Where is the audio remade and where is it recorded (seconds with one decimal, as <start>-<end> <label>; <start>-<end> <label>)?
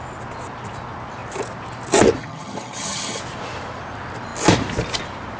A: 0.0-2.2 recorded; 2.2-3.2 remade; 3.2-5.4 recorded